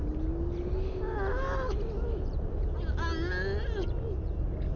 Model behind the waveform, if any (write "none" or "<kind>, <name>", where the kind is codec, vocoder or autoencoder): none